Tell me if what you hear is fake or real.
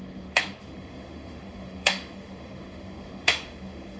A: fake